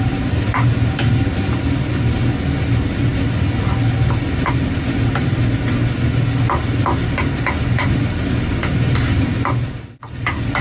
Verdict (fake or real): real